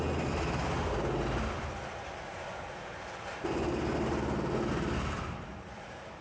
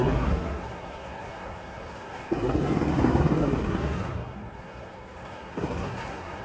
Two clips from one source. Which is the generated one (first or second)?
second